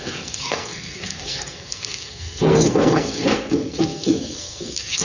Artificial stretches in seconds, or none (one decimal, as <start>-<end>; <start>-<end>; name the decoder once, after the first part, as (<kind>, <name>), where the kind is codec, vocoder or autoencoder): 0.0-5.0 (codec, SNAC)